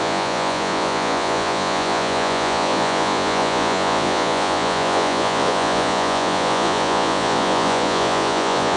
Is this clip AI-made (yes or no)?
yes